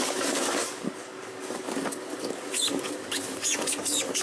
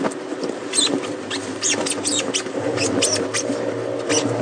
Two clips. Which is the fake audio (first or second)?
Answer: first